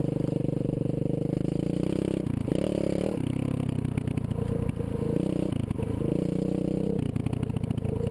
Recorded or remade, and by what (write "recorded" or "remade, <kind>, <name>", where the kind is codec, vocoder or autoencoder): recorded